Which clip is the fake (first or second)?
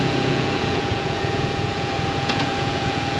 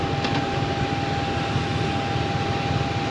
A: first